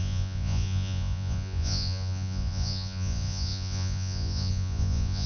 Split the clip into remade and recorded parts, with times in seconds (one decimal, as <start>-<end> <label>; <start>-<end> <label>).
0.0-5.3 remade